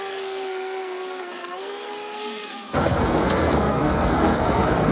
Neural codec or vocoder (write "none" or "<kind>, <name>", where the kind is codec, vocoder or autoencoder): codec, SNAC